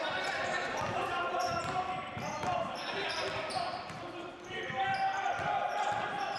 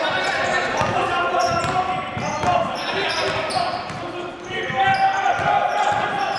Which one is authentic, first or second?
second